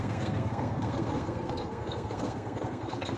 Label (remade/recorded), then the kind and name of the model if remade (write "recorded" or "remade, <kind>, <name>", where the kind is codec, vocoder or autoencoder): remade, codec, SNAC